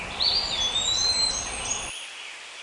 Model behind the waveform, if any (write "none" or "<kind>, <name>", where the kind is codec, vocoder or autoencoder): none